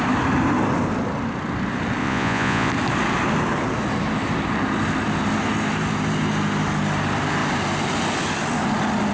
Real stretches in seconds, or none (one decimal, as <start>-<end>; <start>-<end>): 0.0-2.0; 2.7-9.1